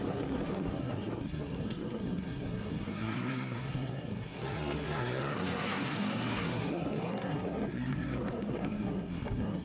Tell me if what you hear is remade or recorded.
remade